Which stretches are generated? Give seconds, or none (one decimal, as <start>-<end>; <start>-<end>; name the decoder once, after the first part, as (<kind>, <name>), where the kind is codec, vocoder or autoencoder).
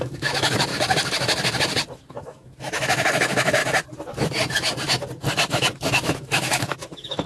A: 0.0-0.7 (autoencoder, DAC-VAE); 2.1-3.6; 5.5-7.3